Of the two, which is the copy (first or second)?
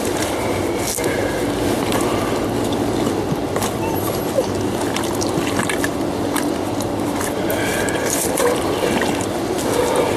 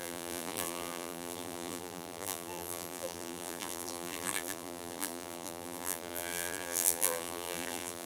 second